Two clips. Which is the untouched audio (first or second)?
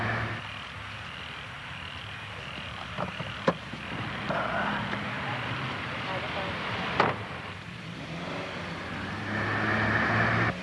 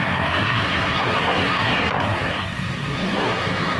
first